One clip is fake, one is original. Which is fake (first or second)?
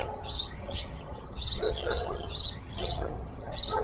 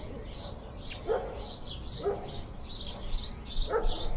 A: first